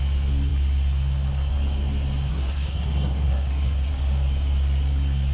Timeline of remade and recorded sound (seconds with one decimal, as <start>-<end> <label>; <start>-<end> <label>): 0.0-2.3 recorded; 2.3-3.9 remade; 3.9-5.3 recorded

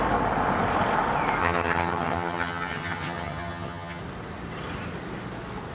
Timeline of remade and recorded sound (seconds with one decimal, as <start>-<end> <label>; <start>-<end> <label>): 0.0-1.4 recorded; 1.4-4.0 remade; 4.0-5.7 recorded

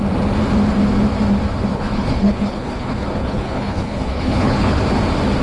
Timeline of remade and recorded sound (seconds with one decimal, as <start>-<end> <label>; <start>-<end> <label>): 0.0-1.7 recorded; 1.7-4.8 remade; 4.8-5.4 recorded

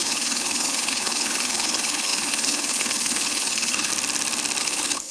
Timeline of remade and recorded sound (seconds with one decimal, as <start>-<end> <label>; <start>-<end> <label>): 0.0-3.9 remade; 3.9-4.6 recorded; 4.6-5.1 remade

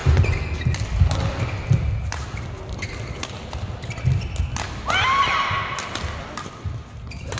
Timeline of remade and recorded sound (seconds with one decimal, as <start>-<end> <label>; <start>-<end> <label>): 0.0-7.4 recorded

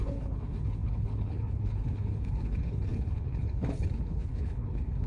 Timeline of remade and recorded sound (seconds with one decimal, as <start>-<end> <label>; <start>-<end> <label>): 0.0-5.1 remade

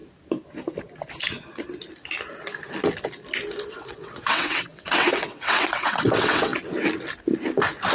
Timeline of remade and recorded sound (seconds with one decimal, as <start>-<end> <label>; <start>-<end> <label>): 0.0-3.7 recorded; 3.7-6.5 remade; 6.5-7.9 recorded

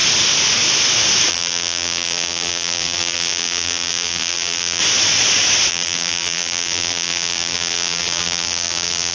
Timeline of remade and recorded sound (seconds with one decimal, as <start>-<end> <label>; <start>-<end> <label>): 0.0-1.3 recorded; 1.3-4.8 remade; 4.8-5.7 recorded; 5.7-9.1 remade